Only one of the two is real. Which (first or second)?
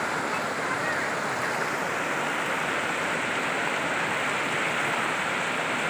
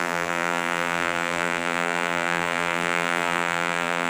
first